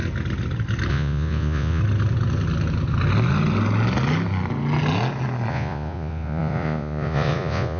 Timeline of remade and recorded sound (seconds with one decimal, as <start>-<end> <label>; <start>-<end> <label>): 0.0-0.9 recorded; 0.9-1.8 remade; 1.8-5.5 recorded; 5.5-7.8 remade